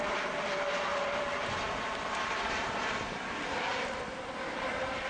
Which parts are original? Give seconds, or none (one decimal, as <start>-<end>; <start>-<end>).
0.0-0.9; 3.9-5.1